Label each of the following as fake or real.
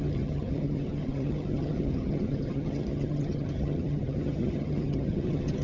fake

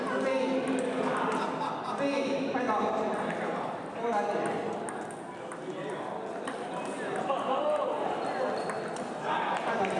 real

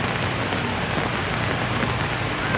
real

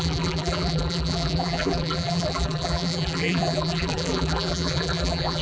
fake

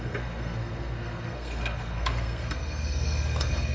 fake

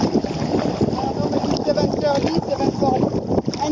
real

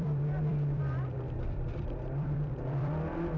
fake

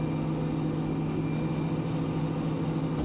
real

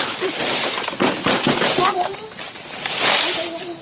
real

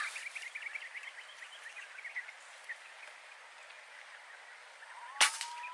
real